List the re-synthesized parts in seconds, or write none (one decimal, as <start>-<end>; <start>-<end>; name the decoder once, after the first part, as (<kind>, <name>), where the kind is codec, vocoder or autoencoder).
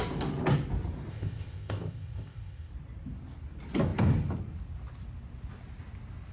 1.1-2.7 (codec, ZipCodec)